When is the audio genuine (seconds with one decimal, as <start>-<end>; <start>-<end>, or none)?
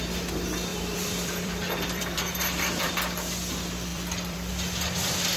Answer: 0.0-0.7; 2.9-3.9; 4.5-5.4